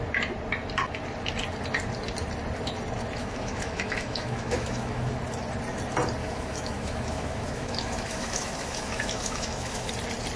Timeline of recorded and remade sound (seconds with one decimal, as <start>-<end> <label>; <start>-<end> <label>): 0.0-3.2 recorded; 3.2-5.1 remade; 5.1-6.2 recorded; 6.2-9.9 remade; 9.9-10.4 recorded